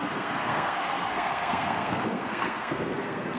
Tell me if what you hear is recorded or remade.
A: remade